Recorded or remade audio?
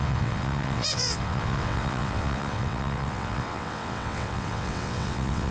remade